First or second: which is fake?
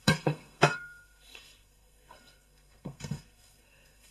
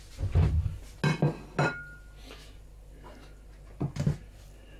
first